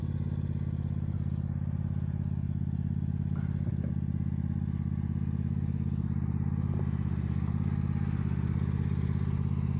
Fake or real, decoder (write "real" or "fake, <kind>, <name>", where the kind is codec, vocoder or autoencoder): real